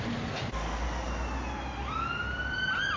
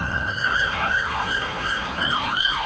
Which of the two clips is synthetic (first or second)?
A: second